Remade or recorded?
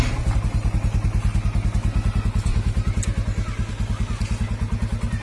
recorded